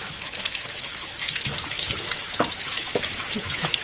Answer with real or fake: fake